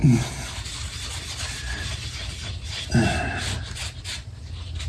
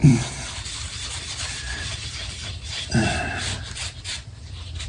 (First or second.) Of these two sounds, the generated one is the second